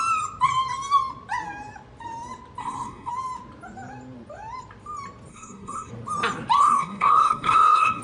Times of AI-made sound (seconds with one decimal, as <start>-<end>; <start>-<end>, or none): 2.6-3.1; 5.3-5.9; 6.6-8.0